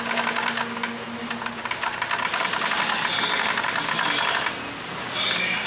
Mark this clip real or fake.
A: real